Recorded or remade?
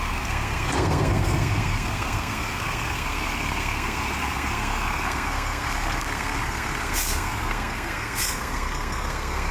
remade